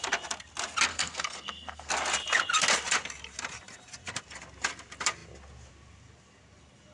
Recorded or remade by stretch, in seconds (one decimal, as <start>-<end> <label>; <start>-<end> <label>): 0.0-0.9 recorded; 0.9-1.9 remade; 1.9-6.9 recorded